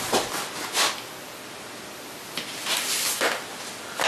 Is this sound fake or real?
real